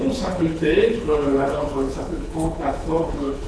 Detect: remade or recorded remade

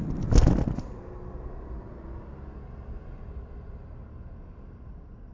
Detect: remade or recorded recorded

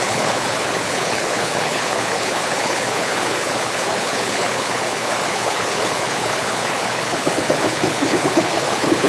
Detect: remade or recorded remade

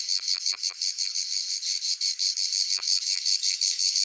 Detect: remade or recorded remade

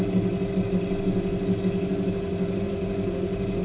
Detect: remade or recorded recorded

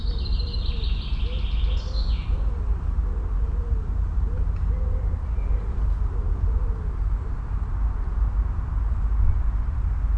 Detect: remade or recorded recorded